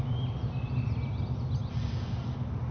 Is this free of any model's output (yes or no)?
yes